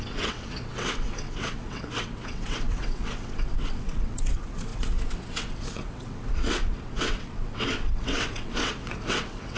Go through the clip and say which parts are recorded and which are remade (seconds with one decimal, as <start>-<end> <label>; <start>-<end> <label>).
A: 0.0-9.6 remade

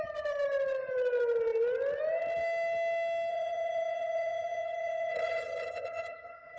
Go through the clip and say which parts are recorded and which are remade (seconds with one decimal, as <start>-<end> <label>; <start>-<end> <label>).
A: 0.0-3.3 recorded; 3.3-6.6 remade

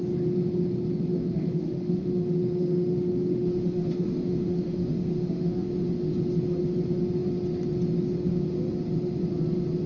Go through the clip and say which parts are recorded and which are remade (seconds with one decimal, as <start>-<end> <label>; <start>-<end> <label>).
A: 0.0-1.1 recorded; 1.1-5.7 remade; 5.7-9.9 recorded

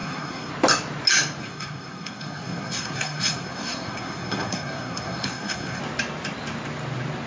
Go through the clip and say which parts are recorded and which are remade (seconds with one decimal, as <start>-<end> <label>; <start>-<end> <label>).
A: 0.0-0.5 remade; 0.5-1.4 recorded; 1.4-5.8 remade; 5.8-7.3 recorded

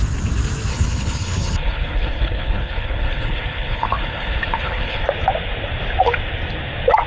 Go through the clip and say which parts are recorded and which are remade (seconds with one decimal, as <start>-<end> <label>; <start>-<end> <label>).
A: 0.0-0.7 recorded; 0.7-5.0 remade; 5.0-7.1 recorded